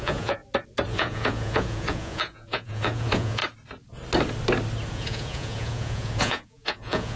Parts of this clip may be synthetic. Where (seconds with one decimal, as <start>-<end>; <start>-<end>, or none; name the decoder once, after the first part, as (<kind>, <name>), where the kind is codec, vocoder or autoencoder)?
0.0-0.4 (vocoder, Vocos); 0.9-3.4; 4.9-7.2

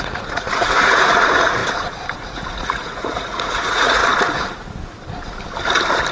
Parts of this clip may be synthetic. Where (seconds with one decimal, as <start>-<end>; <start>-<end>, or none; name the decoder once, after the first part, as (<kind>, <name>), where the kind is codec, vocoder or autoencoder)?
0.0-1.6 (vocoder, Vocos); 2.2-4.0

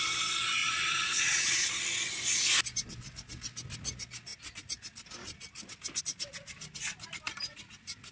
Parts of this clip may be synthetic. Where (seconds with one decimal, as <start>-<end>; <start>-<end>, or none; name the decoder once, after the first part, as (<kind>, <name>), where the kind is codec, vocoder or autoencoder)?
0.6-1.7 (vocoder, Vocos)

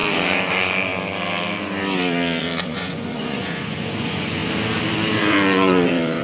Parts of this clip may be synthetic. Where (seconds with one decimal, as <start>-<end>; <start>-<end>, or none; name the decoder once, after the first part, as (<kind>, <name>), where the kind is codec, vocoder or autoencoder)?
0.5-0.9 (vocoder, Vocos); 2.4-4.4; 5.1-6.2

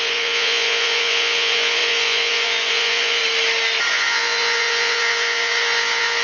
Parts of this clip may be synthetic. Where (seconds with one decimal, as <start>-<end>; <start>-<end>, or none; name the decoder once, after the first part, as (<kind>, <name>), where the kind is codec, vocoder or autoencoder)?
0.0-3.2 (vocoder, Vocos); 3.9-6.2

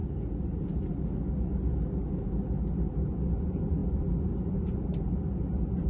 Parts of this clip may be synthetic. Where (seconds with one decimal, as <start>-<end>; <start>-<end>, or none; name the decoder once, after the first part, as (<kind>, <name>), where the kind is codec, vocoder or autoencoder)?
none

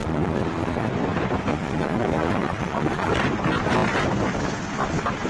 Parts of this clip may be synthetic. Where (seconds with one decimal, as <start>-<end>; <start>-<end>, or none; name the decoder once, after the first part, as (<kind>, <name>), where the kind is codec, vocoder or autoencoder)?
0.0-0.9 (vocoder, Vocos); 1.5-3.1